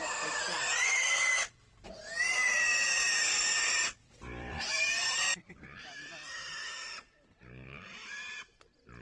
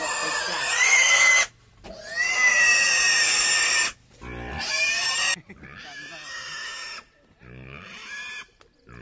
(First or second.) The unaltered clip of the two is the second